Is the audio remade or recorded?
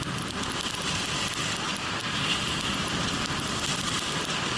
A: recorded